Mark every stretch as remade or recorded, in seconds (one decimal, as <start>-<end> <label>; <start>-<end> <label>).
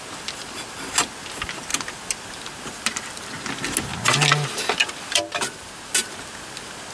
0.0-6.9 recorded